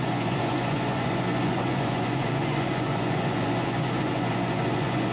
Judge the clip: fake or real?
fake